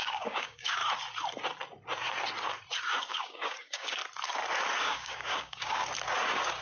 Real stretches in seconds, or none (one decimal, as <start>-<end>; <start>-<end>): 0.8-3.1; 4.0-4.8; 5.8-6.6